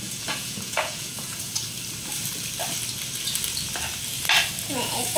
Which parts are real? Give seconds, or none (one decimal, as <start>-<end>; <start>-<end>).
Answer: 1.5-4.6